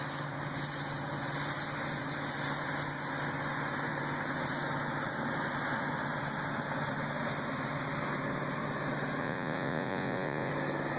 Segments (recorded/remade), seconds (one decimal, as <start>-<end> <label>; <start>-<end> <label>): 0.0-9.2 recorded; 9.2-10.5 remade; 10.5-11.0 recorded